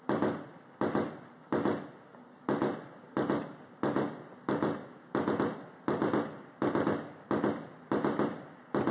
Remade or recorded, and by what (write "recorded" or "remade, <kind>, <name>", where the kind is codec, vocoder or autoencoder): recorded